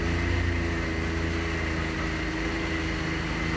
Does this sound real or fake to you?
real